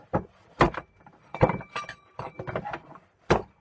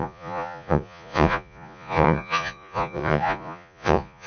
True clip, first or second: first